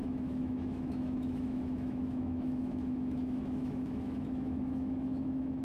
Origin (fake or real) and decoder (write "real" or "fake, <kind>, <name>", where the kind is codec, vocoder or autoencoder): fake, autoencoder, DAC-VAE